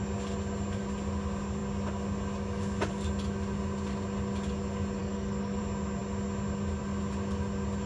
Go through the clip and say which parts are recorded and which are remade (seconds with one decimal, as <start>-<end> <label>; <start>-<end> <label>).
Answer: 0.0-5.0 recorded; 5.0-5.6 remade; 5.6-7.9 recorded